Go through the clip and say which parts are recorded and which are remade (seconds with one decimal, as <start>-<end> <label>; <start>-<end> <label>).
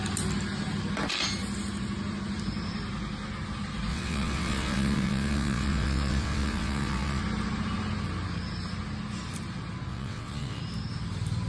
0.0-3.9 recorded; 3.9-7.2 remade; 7.2-9.9 recorded; 9.9-10.6 remade; 10.6-11.5 recorded